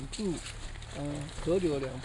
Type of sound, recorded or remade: recorded